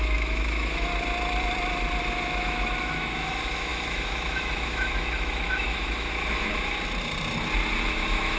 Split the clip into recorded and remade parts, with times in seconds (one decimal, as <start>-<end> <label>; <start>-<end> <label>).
0.0-0.9 remade; 0.9-2.0 recorded; 2.0-6.5 remade; 6.5-7.9 recorded; 7.9-8.4 remade